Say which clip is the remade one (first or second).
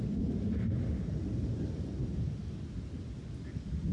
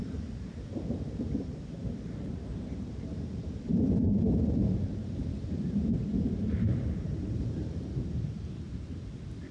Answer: second